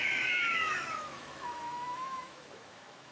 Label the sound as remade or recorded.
remade